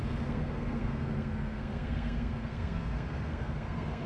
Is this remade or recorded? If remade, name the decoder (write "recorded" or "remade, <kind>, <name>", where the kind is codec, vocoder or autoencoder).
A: remade, codec, SNAC